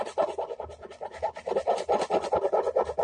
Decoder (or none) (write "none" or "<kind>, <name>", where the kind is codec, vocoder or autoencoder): none